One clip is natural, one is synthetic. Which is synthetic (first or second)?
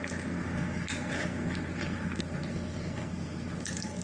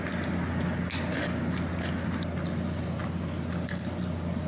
first